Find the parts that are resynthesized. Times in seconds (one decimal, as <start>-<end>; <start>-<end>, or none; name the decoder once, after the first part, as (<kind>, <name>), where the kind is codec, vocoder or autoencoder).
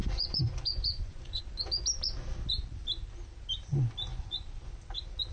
0.0-1.4 (vocoder, Vocos); 4.1-4.7